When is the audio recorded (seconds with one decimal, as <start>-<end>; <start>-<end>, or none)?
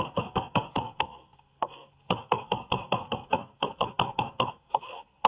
none